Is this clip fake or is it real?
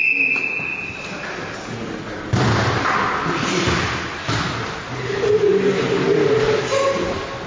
real